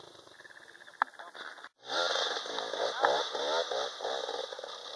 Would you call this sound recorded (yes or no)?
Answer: yes